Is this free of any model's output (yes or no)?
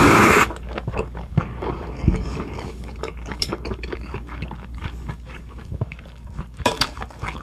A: no